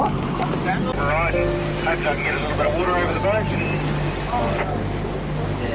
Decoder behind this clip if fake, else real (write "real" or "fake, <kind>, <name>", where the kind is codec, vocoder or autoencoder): real